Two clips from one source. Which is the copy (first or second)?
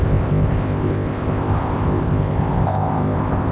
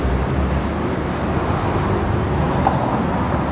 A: first